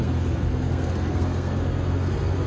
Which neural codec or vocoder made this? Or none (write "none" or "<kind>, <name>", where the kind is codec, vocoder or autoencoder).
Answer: codec, SNAC